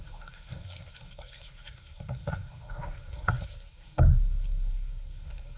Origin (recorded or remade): remade